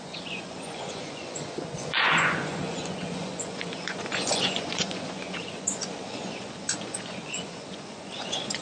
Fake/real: fake